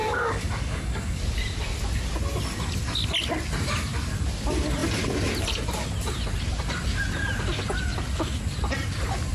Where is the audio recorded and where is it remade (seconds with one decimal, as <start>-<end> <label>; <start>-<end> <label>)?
0.0-1.2 remade; 1.2-9.3 recorded